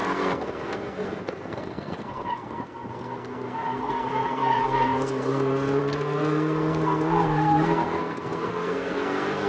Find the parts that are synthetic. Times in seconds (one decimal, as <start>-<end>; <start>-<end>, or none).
0.0-9.5